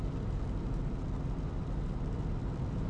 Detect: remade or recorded recorded